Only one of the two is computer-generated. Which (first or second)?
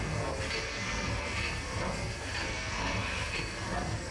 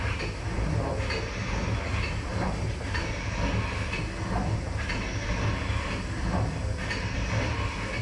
first